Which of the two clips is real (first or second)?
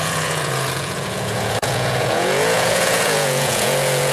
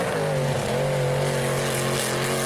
second